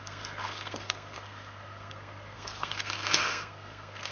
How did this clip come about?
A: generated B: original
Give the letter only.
A